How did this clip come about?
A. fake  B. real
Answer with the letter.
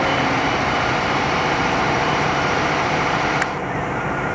A